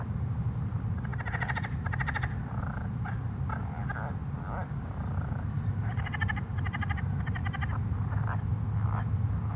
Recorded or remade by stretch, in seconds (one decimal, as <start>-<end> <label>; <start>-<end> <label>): 0.0-3.8 remade; 3.8-4.8 recorded; 4.8-7.4 remade; 7.4-9.0 recorded; 9.0-9.6 remade